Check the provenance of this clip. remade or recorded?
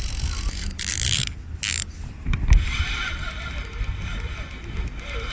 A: recorded